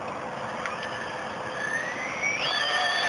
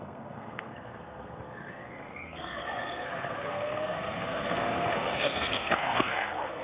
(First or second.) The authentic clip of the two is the first